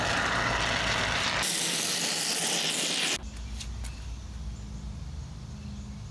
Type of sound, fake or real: real